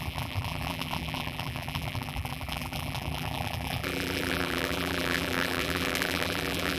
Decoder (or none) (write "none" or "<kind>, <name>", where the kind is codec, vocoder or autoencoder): vocoder, BigVGAN v2